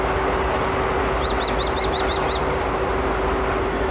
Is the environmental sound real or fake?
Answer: real